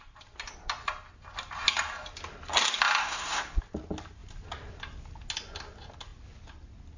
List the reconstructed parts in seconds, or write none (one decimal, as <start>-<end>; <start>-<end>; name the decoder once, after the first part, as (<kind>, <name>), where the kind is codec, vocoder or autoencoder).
3.0-3.6 (codec, SNAC)